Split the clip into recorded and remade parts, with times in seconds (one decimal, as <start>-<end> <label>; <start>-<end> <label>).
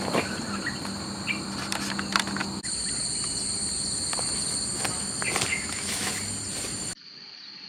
0.0-5.5 recorded; 5.5-6.1 remade; 6.1-7.7 recorded